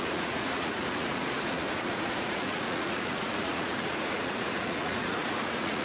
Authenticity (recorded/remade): remade